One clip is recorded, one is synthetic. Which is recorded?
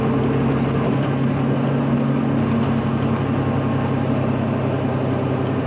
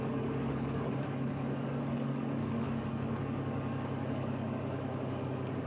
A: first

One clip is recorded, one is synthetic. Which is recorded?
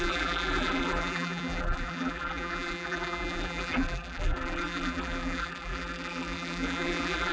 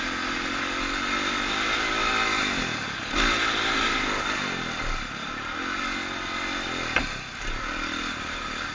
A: second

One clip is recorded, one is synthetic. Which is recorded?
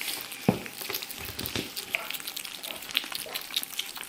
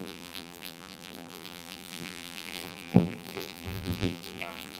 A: first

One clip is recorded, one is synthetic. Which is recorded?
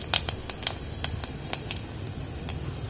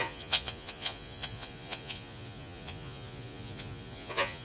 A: first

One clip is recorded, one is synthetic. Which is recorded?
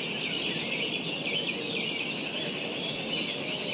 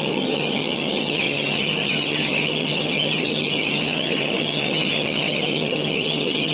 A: first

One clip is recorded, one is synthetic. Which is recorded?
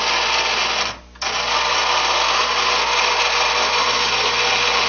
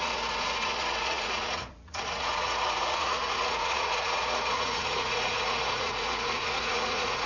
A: first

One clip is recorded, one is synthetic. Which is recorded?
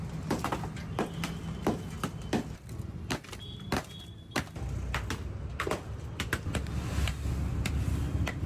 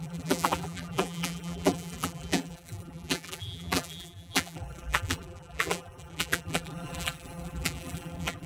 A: first